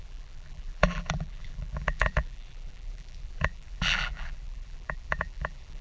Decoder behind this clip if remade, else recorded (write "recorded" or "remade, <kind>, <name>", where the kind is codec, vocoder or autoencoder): remade, vocoder, BigVGAN v2